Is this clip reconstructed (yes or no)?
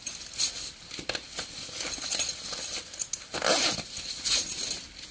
no